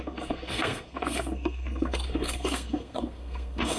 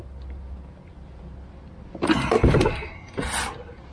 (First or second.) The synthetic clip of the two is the first